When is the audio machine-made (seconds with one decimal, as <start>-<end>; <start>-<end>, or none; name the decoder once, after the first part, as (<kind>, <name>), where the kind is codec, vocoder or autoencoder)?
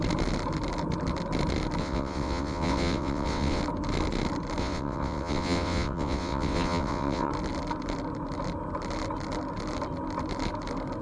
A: 1.8-3.6 (vocoder, WaveNeXt); 4.6-7.3